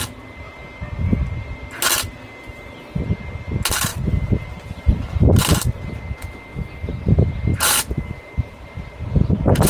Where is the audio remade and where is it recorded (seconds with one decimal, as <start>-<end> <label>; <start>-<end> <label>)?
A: 0.0-3.9 recorded; 3.9-5.1 remade; 5.1-7.5 recorded; 7.5-9.7 remade